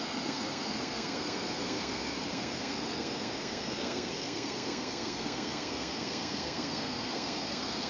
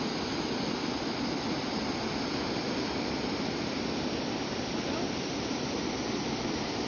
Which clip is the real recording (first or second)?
second